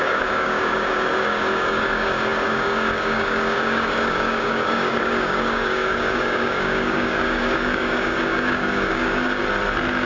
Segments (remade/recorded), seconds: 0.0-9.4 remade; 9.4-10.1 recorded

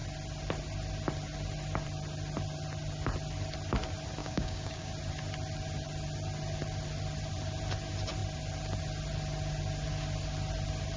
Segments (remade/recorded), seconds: 0.0-4.2 recorded; 4.2-4.9 remade; 4.9-11.0 recorded

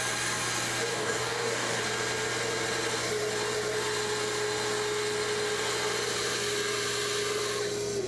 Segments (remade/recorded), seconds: 0.0-0.9 recorded; 0.9-1.8 remade; 1.8-8.1 recorded